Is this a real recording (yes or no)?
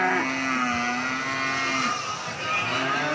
yes